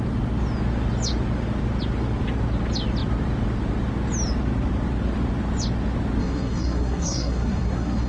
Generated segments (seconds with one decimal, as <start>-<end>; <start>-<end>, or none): 6.2-8.1